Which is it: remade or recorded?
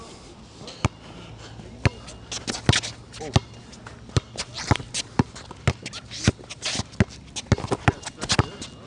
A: recorded